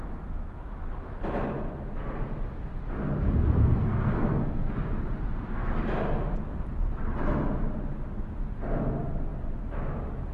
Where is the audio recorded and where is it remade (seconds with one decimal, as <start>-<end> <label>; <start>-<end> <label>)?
0.0-3.6 recorded; 3.6-4.7 remade; 4.7-10.3 recorded